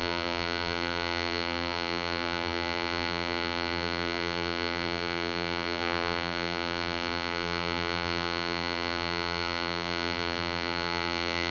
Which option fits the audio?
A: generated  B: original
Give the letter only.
A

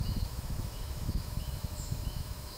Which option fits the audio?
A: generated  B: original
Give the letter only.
A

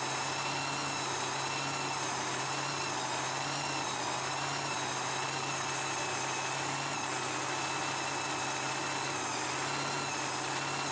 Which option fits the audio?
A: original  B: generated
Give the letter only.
A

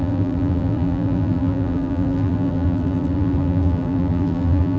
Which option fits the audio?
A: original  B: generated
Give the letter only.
B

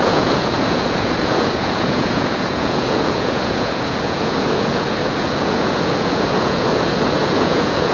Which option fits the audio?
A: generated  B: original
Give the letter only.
A